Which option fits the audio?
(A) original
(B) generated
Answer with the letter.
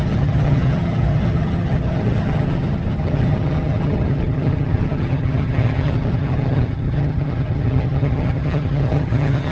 B